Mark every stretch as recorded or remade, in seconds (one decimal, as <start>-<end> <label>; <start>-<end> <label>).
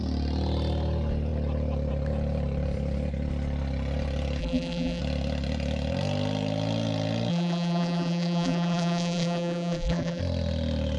0.0-4.4 recorded; 4.4-5.0 remade; 5.0-7.3 recorded; 7.3-10.2 remade; 10.2-11.0 recorded